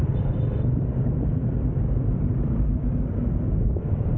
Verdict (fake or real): fake